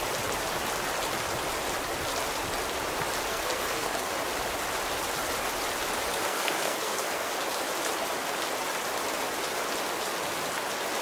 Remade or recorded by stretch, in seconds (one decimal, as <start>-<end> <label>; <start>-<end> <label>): 0.0-3.3 recorded; 3.3-4.1 remade; 4.1-6.1 recorded; 6.1-7.3 remade; 7.3-11.0 recorded